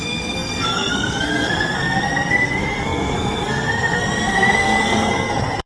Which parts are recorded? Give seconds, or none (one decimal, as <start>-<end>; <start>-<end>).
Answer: none